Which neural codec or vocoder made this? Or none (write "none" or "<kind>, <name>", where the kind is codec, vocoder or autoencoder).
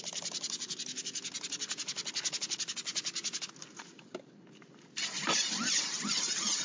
none